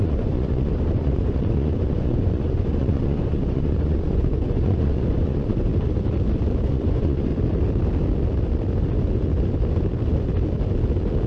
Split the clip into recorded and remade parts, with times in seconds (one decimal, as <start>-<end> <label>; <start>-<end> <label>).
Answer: 0.0-5.7 remade; 5.7-6.6 recorded; 6.6-7.3 remade; 7.3-11.3 recorded

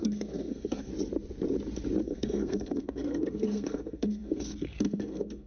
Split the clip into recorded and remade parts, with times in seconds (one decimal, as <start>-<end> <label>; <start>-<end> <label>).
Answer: 0.0-0.9 remade; 0.9-2.0 recorded; 2.0-5.5 remade